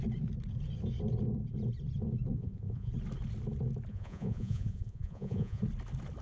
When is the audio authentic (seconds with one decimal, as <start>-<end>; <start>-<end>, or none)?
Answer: 0.0-2.4; 2.9-3.9; 5.6-6.2